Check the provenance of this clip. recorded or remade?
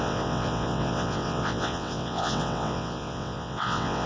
remade